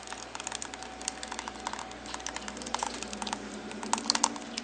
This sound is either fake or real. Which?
real